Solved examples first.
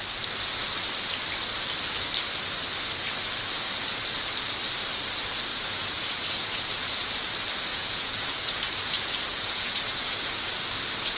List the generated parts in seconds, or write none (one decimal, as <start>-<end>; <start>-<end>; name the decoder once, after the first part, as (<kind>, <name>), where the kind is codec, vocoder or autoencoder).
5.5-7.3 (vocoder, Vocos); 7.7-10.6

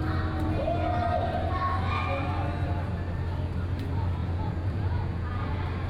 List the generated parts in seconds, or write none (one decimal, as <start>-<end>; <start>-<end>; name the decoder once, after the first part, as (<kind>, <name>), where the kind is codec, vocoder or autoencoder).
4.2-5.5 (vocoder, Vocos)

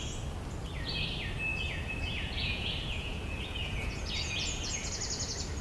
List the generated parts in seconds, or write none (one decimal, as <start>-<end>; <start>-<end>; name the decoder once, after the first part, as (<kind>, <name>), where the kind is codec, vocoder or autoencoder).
1.5-4.9 (vocoder, Vocos)

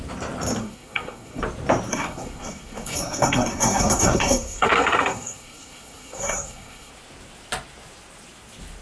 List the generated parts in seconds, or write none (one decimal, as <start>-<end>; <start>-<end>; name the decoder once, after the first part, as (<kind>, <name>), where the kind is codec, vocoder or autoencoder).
0.6-1.4 (codec, SNAC); 1.9-6.9

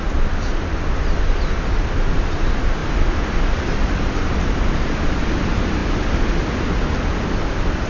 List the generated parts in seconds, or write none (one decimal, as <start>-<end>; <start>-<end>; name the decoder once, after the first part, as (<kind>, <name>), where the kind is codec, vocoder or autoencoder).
none

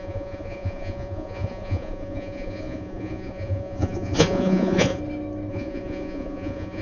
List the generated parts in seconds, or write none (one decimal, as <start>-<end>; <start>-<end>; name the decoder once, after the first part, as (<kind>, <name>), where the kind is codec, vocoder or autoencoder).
0.0-5.0 (vocoder, Vocos); 5.5-6.8